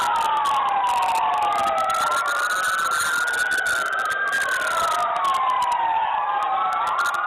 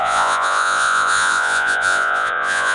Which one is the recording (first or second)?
first